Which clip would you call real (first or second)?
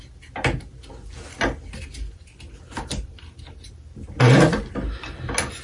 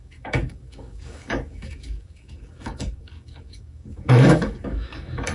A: first